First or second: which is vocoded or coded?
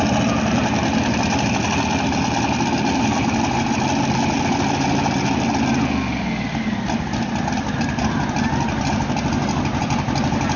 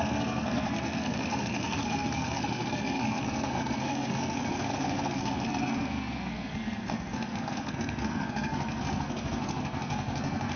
second